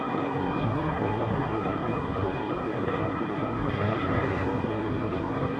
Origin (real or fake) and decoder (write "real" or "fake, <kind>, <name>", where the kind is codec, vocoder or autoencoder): fake, codec, SNAC